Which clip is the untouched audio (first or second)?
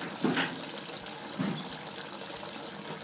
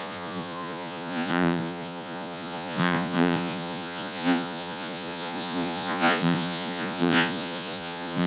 first